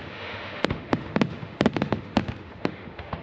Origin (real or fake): fake